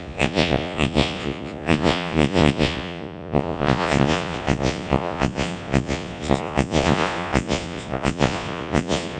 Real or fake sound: fake